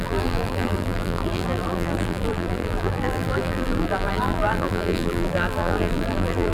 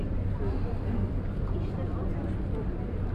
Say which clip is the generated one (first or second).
first